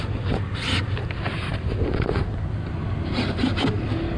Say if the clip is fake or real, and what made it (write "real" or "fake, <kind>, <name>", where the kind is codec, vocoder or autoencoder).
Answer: real